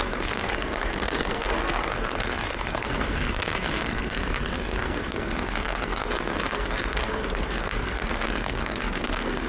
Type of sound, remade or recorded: remade